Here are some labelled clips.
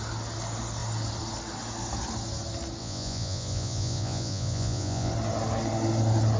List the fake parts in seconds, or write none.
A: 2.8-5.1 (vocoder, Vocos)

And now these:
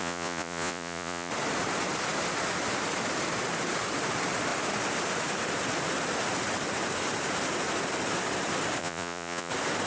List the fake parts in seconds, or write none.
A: 0.0-1.3 (vocoder, Vocos); 8.8-9.5

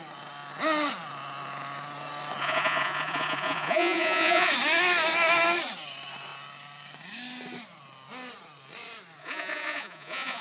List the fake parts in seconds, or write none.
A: 2.4-4.5 (vocoder, Vocos); 9.2-10.4